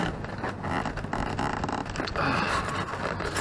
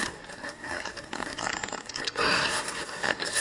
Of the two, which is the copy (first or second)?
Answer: second